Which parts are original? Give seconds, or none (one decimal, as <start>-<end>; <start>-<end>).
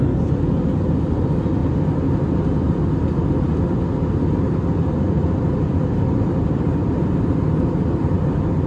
0.0-8.7